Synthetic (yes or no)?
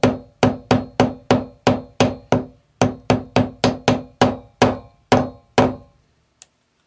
no